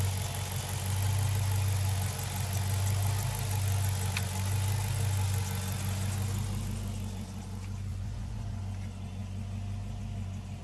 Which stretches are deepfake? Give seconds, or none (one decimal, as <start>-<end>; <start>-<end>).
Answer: 7.9-8.6